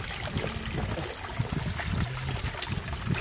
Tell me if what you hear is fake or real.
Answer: real